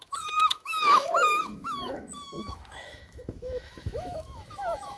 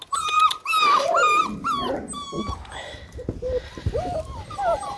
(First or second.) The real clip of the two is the second